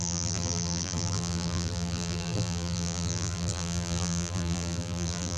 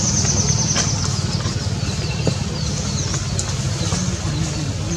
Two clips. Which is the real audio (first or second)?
second